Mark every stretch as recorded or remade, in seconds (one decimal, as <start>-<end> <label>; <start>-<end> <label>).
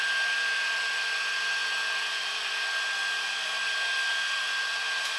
0.0-1.6 remade; 1.6-4.6 recorded; 4.6-5.2 remade